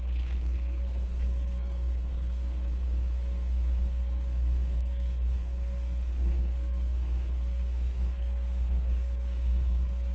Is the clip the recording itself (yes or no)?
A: no